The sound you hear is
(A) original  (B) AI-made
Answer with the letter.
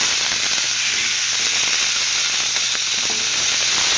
A